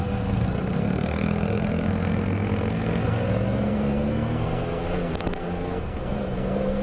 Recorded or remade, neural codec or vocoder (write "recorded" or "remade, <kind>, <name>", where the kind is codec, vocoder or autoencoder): remade, codec, SNAC